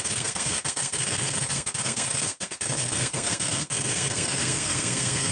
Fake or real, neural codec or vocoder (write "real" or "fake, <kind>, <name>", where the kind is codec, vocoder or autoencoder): fake, codec, SNAC